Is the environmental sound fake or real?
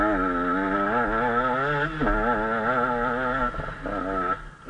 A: real